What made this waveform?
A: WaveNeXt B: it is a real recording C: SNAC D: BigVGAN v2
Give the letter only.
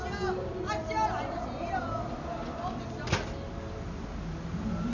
B